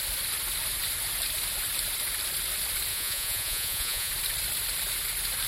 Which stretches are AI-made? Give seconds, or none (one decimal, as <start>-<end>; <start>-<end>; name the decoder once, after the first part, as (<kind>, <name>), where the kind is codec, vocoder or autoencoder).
2.9-4.1 (vocoder, Vocos)